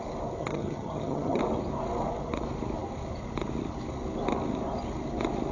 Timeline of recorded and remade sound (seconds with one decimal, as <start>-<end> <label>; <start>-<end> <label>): 0.0-0.4 recorded; 0.4-1.4 remade; 1.4-5.5 recorded